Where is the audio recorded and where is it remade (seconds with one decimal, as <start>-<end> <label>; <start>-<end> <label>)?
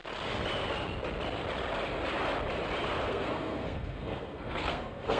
0.0-3.1 recorded; 3.1-5.2 remade